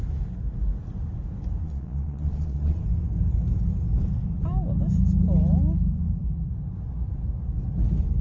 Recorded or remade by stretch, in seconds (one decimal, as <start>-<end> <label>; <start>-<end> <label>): 0.0-1.6 recorded; 1.6-2.8 remade; 2.8-8.2 recorded